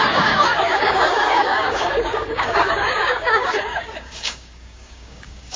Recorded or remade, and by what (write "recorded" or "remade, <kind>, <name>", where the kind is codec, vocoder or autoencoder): remade, codec, DAC